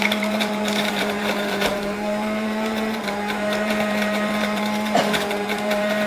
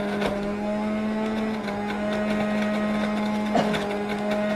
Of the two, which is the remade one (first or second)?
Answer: first